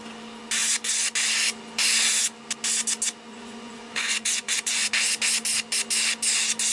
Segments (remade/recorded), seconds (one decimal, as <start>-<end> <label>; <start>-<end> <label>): 0.0-3.3 recorded; 3.3-4.9 remade; 4.9-6.7 recorded